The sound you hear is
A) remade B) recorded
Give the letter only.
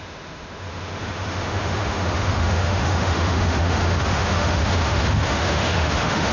A